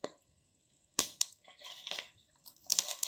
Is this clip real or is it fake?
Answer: fake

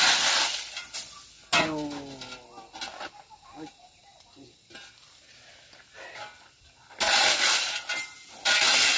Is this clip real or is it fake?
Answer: real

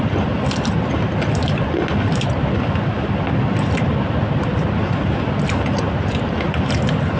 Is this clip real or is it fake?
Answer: real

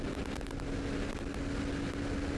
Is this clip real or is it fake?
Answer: real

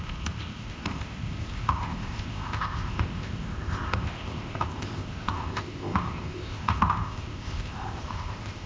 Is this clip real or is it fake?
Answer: fake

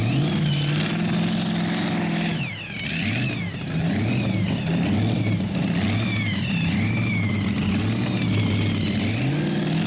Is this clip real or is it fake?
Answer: real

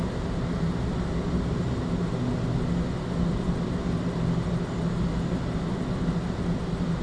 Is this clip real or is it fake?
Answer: real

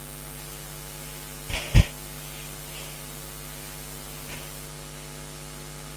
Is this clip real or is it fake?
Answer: real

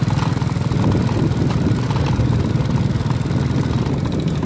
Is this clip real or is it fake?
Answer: real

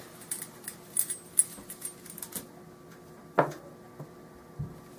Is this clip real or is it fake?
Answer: real